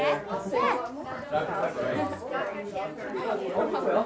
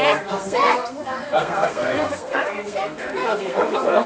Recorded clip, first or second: first